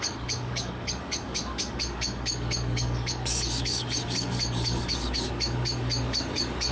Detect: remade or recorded remade